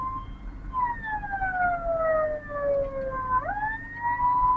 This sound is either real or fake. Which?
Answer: real